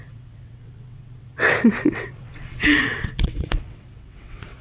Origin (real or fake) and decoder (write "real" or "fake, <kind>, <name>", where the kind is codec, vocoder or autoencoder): fake, vocoder, WaveNeXt